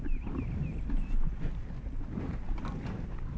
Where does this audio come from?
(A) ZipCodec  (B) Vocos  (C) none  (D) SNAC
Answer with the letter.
C